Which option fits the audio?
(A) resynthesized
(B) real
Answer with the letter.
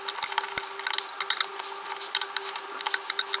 B